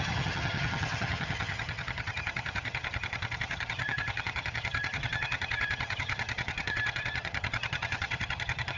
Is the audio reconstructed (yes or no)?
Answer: yes